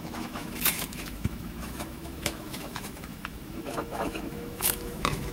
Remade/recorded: remade